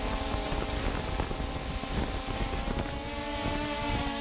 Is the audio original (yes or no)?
yes